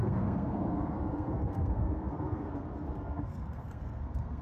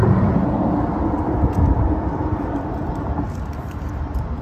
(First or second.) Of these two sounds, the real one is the second